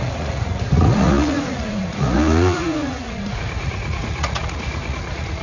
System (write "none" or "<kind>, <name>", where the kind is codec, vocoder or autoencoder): vocoder, Vocos